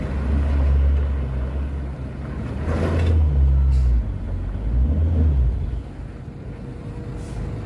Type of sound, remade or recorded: recorded